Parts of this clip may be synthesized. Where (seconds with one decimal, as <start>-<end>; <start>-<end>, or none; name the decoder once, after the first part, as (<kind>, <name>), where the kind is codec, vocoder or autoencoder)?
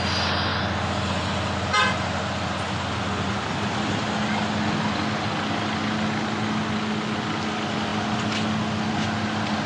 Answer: none